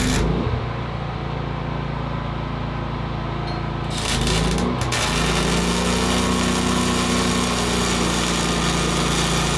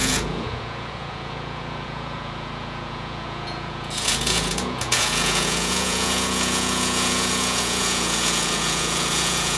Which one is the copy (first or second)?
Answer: second